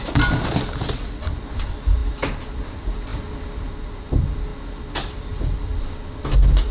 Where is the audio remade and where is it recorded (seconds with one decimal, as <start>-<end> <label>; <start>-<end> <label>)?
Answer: 0.0-3.1 remade; 3.1-3.7 recorded; 3.7-4.5 remade; 4.5-5.1 recorded; 5.1-5.7 remade; 5.7-6.7 recorded